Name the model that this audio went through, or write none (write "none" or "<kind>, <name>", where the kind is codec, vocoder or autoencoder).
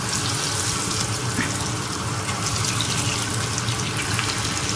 none